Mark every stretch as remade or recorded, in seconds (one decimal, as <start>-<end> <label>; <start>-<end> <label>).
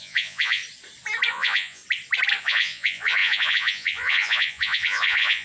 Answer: 0.0-0.6 remade; 0.6-1.3 recorded; 1.3-1.8 remade; 1.8-2.4 recorded; 2.4-5.4 remade